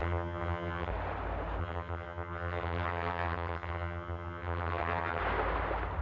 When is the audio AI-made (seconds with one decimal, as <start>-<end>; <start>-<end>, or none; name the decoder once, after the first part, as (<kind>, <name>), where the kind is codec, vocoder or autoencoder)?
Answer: 0.0-0.9 (vocoder, HiFi-GAN); 1.6-5.2